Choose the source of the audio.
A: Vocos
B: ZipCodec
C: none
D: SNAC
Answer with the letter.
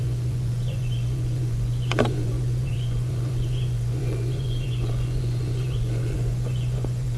A